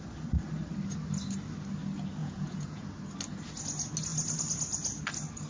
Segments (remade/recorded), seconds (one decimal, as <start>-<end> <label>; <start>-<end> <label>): 0.0-2.2 recorded; 2.2-2.8 remade; 2.8-5.5 recorded